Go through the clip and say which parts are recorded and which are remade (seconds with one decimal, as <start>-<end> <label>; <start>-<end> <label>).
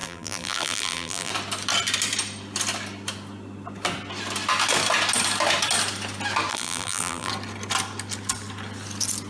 0.0-1.3 remade; 1.3-6.5 recorded; 6.5-7.3 remade; 7.3-9.3 recorded